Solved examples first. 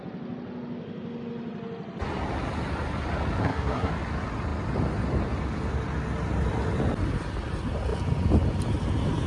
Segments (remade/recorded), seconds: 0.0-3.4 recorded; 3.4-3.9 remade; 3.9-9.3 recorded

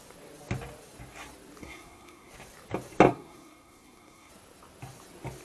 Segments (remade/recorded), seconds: 0.0-1.6 recorded; 1.6-2.3 remade; 2.3-3.1 recorded; 3.1-4.3 remade; 4.3-5.4 recorded

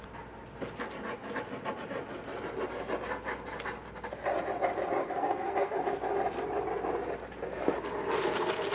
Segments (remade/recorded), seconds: 0.0-5.0 recorded; 5.0-5.8 remade; 5.8-8.7 recorded

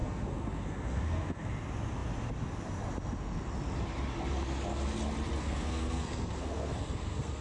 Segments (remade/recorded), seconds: 0.0-1.5 remade; 1.5-5.4 recorded; 5.4-7.4 remade

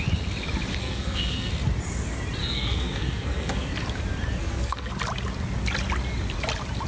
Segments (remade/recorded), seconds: 0.0-0.8 recorded; 0.8-1.5 remade; 1.5-2.4 recorded; 2.4-3.7 remade; 3.7-4.4 recorded; 4.4-4.9 remade; 4.9-6.9 recorded

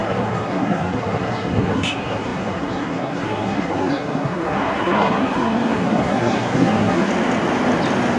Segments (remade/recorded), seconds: 0.0-7.1 remade; 7.1-8.2 recorded

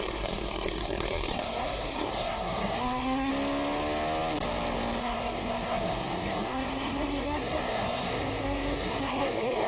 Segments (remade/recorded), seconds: 0.0-3.3 remade; 3.3-5.0 recorded; 5.0-9.7 remade

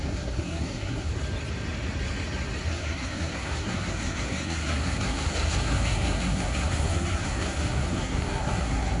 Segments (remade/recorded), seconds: 0.0-1.1 remade; 1.1-2.7 recorded; 2.7-9.0 remade